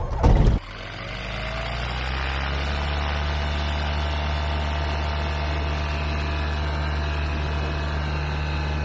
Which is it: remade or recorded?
recorded